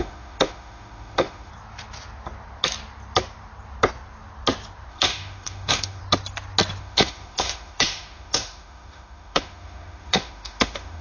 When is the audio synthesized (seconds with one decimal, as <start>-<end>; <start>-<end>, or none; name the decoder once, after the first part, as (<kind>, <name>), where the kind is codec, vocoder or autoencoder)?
0.0-1.5 (autoencoder, DAC-VAE); 4.9-6.0; 6.8-11.0